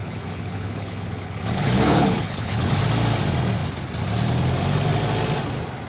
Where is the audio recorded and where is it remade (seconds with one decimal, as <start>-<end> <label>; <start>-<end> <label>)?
0.0-2.8 remade; 2.8-5.9 recorded